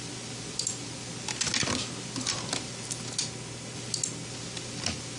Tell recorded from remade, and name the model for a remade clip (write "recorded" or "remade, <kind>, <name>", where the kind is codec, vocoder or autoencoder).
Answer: recorded